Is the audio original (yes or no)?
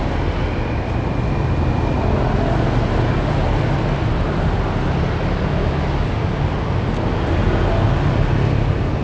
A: yes